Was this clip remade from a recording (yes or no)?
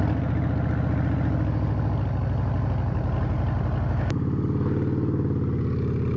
no